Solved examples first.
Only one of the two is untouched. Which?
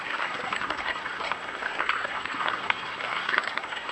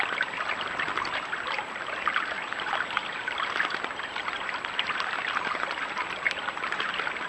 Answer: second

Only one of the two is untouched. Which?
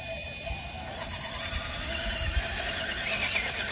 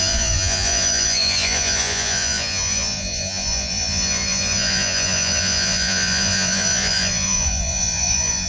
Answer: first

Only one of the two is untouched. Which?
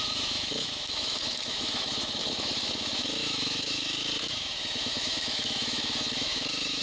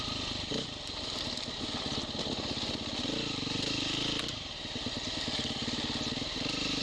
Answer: second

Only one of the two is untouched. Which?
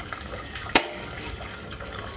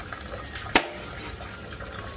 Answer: second